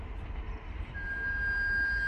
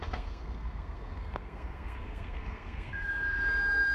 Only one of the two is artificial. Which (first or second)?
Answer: second